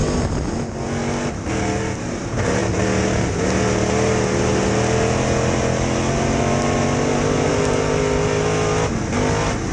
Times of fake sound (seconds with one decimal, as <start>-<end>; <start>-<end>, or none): none